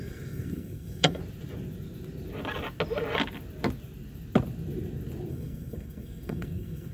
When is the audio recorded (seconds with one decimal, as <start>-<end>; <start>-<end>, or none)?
1.2-5.3